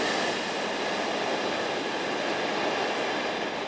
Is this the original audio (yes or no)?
yes